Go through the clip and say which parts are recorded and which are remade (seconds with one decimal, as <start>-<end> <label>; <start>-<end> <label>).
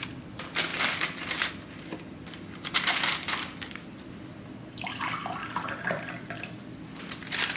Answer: 0.0-7.6 remade